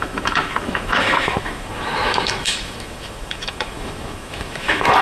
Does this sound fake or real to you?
fake